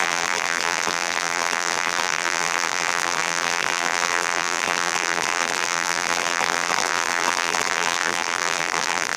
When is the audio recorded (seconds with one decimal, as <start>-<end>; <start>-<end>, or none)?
none